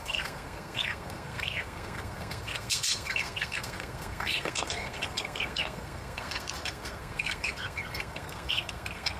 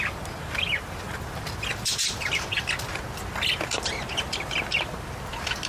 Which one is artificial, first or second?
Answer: first